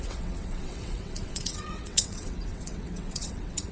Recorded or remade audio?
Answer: remade